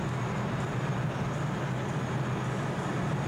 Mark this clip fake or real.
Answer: real